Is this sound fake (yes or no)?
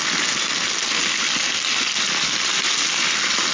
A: no